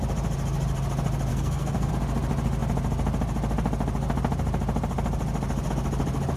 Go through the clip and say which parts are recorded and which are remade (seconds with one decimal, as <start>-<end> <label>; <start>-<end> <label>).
0.0-1.3 recorded; 1.3-1.9 remade; 1.9-6.4 recorded